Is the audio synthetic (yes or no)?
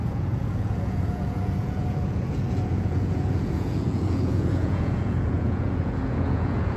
yes